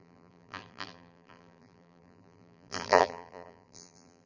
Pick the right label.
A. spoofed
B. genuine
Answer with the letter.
A